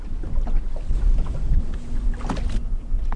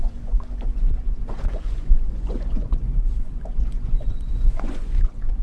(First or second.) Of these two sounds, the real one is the first